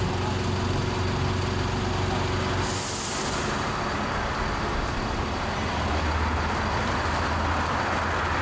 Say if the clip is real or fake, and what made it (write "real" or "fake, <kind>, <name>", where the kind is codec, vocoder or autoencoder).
real